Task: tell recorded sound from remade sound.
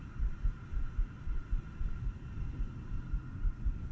recorded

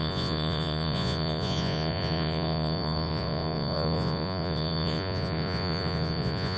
remade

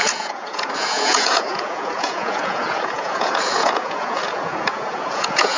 remade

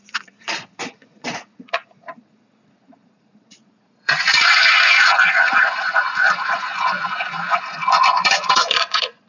remade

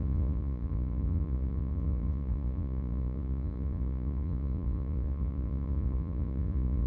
remade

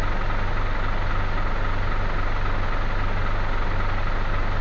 recorded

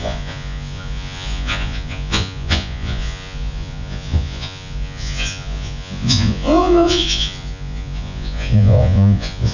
remade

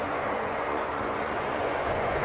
remade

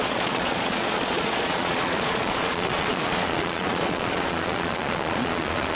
remade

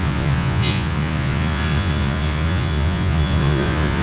remade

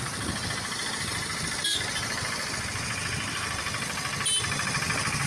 recorded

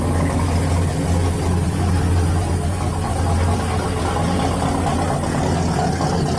recorded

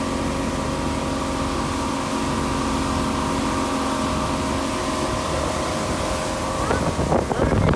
recorded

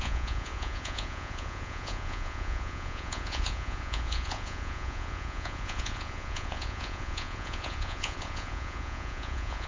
remade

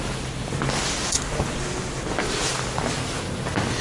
recorded